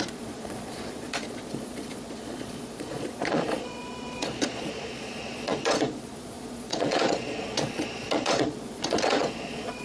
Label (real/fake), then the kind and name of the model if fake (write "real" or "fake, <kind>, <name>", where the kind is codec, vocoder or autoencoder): fake, vocoder, Vocos